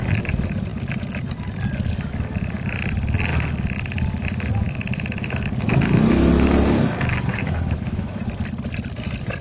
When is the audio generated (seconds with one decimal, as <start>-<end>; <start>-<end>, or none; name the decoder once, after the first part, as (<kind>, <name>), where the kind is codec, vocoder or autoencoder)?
7.3-8.2 (autoencoder, DAC-VAE)